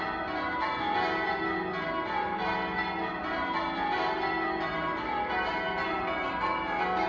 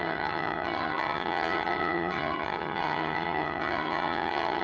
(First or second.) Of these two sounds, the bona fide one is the first